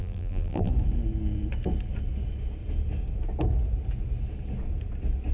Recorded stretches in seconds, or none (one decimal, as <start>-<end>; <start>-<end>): 0.7-5.3